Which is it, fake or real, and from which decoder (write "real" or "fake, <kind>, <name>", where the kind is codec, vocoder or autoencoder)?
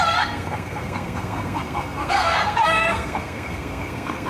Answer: fake, codec, SNAC